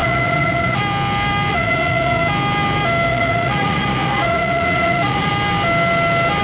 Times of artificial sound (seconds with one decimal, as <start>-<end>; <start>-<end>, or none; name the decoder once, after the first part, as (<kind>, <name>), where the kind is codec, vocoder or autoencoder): 0.0-0.8 (vocoder, Vocos); 1.5-2.2; 3.1-5.3